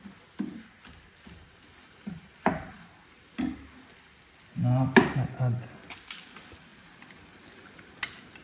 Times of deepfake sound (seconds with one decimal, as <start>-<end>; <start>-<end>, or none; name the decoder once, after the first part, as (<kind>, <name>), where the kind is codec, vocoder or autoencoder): 1.8-2.9 (vocoder, BigVGAN v2)